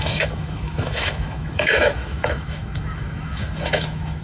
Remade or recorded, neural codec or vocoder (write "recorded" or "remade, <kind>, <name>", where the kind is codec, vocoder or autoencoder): remade, autoencoder, DAC-VAE